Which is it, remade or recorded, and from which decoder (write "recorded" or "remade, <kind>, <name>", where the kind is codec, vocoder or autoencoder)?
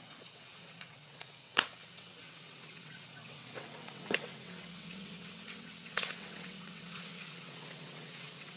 remade, vocoder, WaveNeXt